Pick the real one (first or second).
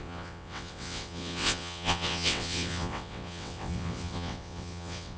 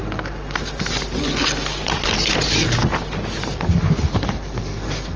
second